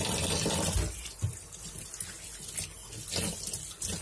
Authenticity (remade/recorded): recorded